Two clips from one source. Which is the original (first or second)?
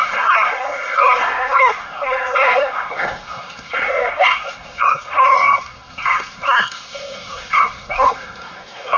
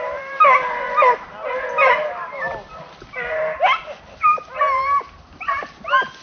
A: second